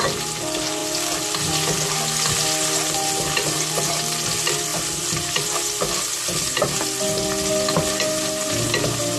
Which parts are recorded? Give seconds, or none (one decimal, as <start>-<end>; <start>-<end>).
0.0-9.2